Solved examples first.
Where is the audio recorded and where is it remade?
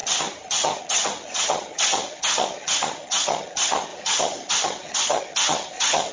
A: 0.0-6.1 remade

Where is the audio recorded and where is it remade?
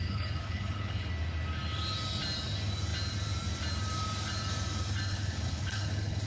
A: 0.0-1.1 remade; 1.1-5.1 recorded; 5.1-6.3 remade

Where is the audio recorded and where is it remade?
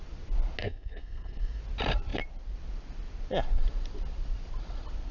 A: 0.0-0.6 recorded; 0.6-1.6 remade; 1.6-5.1 recorded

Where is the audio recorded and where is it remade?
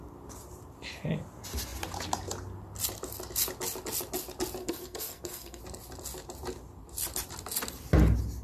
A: 0.0-4.6 recorded; 4.6-5.6 remade; 5.6-8.4 recorded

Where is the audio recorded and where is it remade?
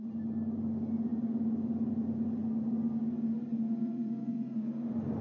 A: 0.0-3.5 recorded; 3.5-4.7 remade; 4.7-5.2 recorded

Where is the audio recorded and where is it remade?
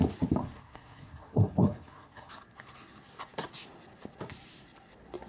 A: 0.0-0.4 recorded; 0.4-2.3 remade; 2.3-5.3 recorded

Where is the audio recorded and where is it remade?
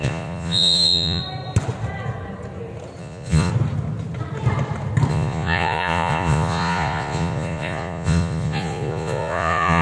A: 0.0-1.2 remade; 1.2-3.0 recorded; 3.0-3.5 remade; 3.5-5.1 recorded; 5.1-9.8 remade